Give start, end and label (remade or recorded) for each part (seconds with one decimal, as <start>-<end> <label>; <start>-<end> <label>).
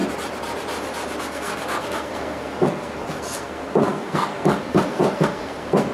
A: 0.0-1.2 recorded; 1.2-5.9 remade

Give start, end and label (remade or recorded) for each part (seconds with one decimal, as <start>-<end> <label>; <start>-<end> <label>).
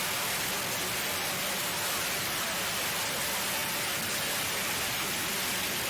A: 0.0-5.9 recorded